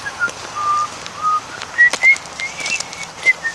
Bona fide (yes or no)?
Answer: yes